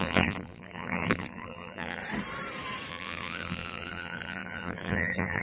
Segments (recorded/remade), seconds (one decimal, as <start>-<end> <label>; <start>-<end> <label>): 0.0-2.0 remade; 2.0-2.9 recorded; 2.9-5.4 remade